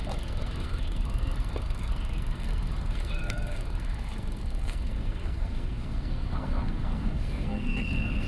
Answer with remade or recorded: remade